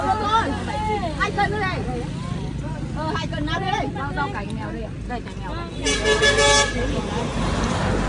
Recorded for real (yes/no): yes